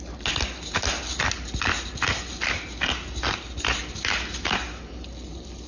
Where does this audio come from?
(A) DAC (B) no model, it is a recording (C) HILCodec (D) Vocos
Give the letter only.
B